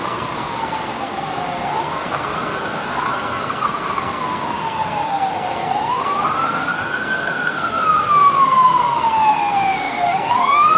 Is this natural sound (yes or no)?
no